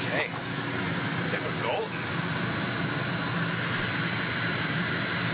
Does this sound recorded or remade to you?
recorded